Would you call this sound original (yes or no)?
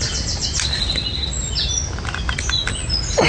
yes